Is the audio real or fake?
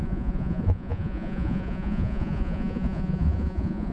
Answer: fake